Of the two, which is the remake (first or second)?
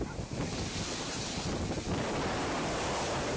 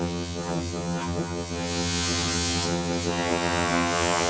second